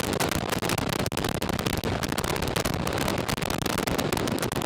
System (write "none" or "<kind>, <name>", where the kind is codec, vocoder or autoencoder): none